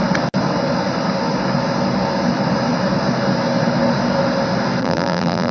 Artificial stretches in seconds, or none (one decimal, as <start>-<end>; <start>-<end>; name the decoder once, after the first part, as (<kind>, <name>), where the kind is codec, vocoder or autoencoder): 4.8-5.5 (vocoder, BigVGAN v2)